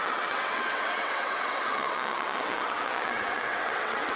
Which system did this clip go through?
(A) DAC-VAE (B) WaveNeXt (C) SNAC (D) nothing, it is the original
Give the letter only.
B